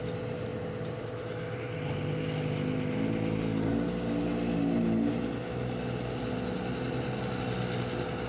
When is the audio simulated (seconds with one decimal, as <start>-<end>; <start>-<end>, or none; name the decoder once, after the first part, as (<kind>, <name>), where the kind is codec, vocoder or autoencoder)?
none